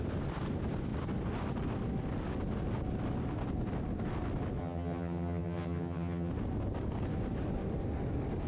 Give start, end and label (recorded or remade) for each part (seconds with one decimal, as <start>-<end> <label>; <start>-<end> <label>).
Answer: 0.0-4.6 recorded; 4.6-6.3 remade; 6.3-8.5 recorded